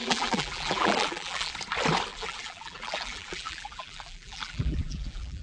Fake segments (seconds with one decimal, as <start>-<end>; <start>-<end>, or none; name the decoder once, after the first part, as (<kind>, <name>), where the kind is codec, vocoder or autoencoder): 0.0-1.5 (vocoder, BigVGAN v2); 2.1-5.4